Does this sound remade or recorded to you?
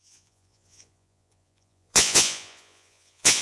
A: remade